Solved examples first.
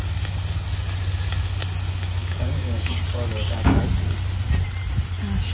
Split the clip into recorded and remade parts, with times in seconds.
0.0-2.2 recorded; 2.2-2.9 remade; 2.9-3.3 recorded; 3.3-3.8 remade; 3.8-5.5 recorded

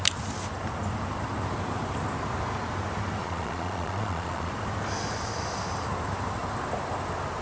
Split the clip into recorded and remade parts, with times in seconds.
0.0-3.2 recorded; 3.2-4.5 remade; 4.5-7.4 recorded